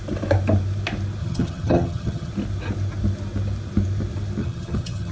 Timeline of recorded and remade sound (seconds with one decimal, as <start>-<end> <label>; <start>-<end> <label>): 0.0-1.2 recorded; 1.2-2.3 remade; 2.3-4.4 recorded; 4.4-5.1 remade